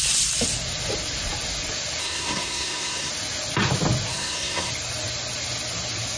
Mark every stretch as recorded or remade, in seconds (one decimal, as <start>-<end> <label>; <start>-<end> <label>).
0.0-2.0 recorded; 2.0-3.1 remade; 3.1-4.1 recorded; 4.1-4.7 remade; 4.7-6.2 recorded